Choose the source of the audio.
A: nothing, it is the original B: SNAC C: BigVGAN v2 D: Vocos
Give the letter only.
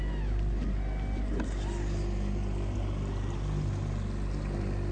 A